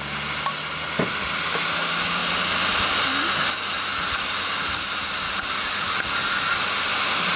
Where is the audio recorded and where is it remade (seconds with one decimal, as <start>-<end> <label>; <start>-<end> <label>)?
0.0-7.4 recorded